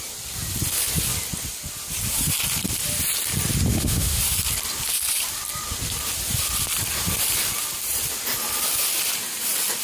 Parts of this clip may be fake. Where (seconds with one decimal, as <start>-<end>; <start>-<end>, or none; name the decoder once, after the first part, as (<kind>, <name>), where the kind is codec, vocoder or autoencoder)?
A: 3.7-4.2 (autoencoder, DAC-VAE)